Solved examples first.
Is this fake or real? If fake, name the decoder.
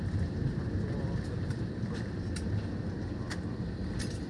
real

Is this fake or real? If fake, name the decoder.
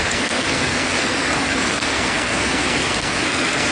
fake, codec, SNAC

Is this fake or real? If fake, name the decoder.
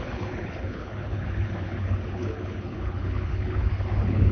fake, codec, HILCodec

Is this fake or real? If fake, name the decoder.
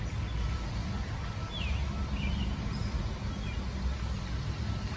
real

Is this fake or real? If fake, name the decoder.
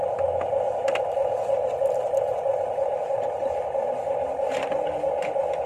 real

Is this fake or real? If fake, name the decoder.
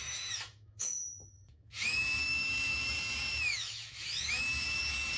fake, autoencoder, DAC-VAE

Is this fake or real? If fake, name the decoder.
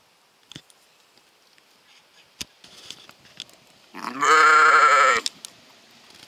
real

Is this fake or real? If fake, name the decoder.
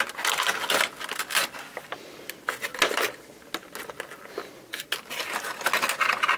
real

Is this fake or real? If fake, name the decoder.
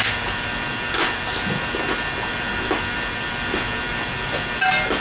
real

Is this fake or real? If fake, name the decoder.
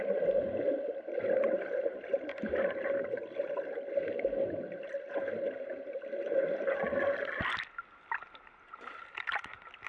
real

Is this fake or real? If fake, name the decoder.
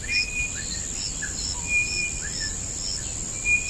real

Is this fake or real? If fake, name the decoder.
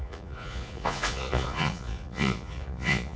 fake, vocoder, Vocos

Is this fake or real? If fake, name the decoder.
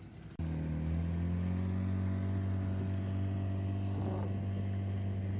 real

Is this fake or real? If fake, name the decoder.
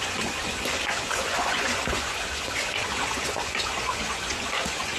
fake, vocoder, Vocos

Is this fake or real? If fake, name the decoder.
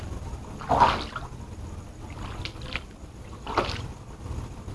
real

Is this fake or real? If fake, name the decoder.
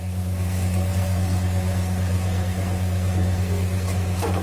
fake, codec, SNAC